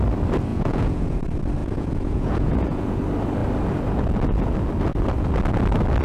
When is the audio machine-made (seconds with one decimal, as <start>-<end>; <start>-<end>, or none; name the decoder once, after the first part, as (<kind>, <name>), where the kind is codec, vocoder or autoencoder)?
0.5-1.2 (vocoder, Vocos); 1.6-3.0